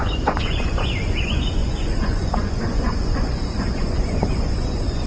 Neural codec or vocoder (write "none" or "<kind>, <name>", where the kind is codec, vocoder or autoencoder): vocoder, Vocos